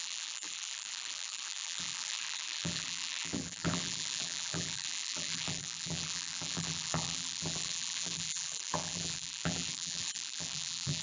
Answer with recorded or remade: remade